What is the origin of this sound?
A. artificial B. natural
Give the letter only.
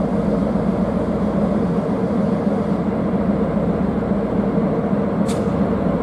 B